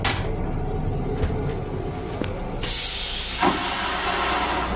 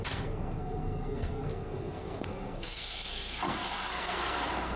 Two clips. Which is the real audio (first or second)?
first